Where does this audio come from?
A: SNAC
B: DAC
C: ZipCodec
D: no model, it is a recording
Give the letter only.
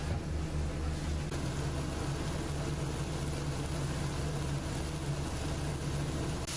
D